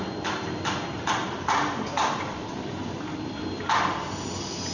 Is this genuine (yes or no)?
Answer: yes